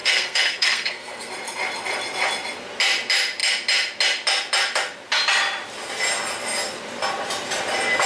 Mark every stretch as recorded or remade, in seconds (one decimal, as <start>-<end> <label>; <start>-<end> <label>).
0.0-1.3 remade; 1.3-8.1 recorded